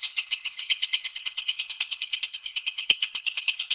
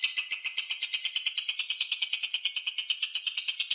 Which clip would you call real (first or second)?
second